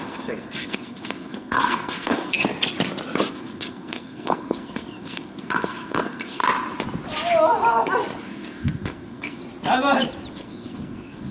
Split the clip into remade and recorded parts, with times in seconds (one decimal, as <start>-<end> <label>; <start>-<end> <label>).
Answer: 0.0-2.4 remade; 2.4-3.3 recorded; 3.3-6.4 remade; 6.4-8.2 recorded; 8.2-9.4 remade; 9.4-10.3 recorded; 10.3-11.3 remade